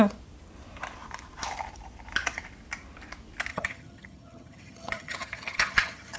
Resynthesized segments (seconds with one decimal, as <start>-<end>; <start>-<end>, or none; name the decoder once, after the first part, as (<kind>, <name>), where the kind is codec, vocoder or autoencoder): 3.5-6.2 (vocoder, HiFi-GAN)